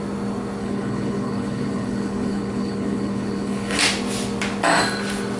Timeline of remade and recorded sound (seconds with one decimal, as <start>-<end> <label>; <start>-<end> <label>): 0.0-0.6 recorded; 0.6-3.8 remade; 3.8-5.4 recorded